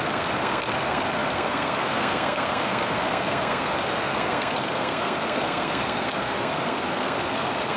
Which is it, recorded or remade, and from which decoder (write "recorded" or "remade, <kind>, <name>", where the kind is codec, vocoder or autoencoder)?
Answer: remade, codec, SNAC